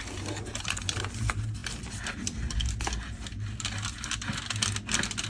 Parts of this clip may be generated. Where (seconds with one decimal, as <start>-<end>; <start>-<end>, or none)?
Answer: none